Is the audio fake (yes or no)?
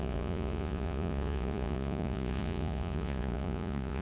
yes